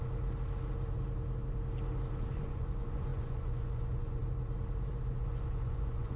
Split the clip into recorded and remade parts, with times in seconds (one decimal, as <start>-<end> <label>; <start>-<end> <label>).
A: 0.0-2.3 recorded; 2.3-4.2 remade; 4.2-4.9 recorded; 4.9-6.2 remade